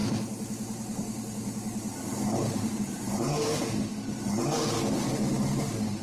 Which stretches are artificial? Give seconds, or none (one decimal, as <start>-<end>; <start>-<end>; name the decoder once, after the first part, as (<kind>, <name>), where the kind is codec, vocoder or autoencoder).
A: 0.0-3.6 (vocoder, BigVGAN v2)